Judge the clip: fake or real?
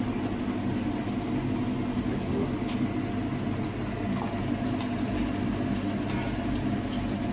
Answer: real